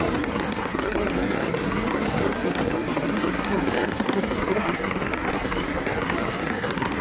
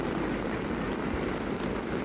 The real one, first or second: second